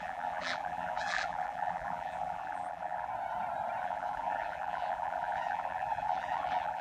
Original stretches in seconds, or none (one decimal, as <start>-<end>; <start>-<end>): 3.1-3.8